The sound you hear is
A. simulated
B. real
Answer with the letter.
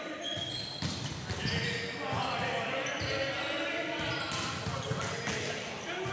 B